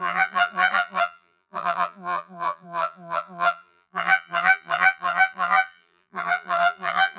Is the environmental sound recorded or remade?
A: remade